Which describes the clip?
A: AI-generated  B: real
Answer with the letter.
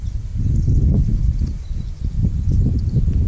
B